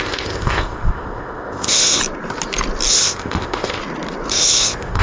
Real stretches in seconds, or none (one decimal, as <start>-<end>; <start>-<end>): 2.0-2.9; 3.8-4.3